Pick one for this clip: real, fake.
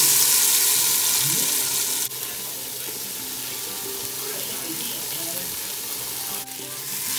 real